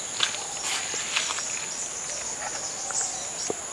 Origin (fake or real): real